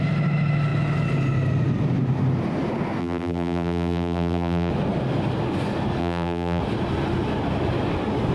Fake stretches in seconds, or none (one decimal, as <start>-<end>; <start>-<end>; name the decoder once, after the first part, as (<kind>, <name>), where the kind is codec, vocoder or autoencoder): 3.0-4.7 (vocoder, BigVGAN v2); 6.0-6.6